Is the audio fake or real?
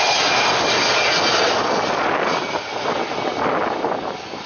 real